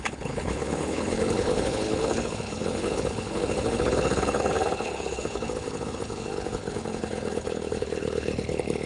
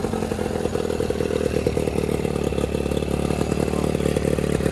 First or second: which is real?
second